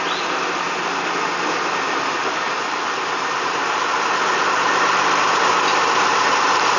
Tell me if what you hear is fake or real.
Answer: real